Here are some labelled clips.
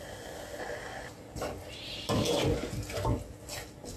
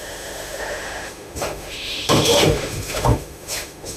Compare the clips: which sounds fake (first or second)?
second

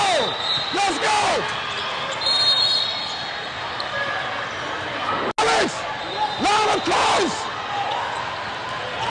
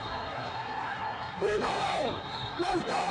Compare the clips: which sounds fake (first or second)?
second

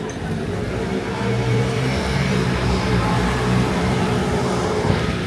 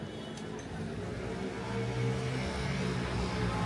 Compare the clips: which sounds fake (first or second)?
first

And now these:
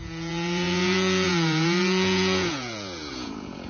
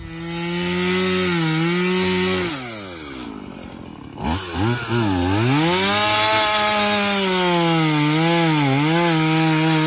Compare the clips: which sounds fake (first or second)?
first